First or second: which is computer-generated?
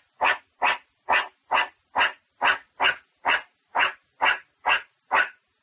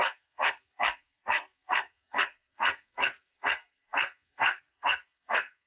second